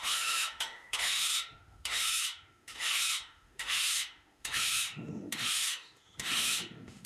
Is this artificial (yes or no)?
yes